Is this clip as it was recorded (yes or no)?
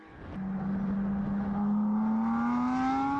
yes